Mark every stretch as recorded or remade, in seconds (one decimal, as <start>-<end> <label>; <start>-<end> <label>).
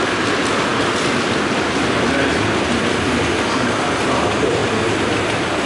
0.0-5.7 recorded